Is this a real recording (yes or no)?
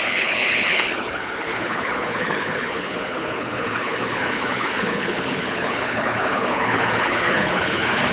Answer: no